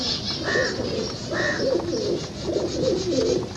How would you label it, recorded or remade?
recorded